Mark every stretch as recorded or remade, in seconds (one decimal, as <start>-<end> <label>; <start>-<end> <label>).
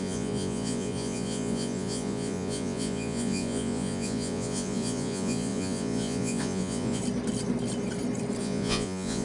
0.0-7.0 remade; 7.0-8.4 recorded; 8.4-9.2 remade